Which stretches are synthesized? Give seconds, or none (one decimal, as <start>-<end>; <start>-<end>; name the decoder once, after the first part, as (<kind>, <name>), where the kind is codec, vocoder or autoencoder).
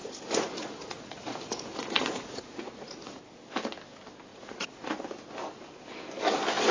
0.0-3.2 (vocoder, Vocos); 4.3-5.0